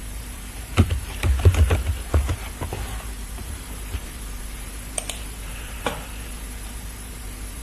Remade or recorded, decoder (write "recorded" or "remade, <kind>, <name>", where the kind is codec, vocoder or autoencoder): remade, vocoder, BigVGAN v2